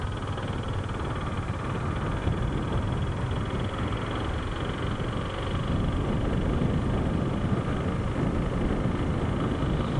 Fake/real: real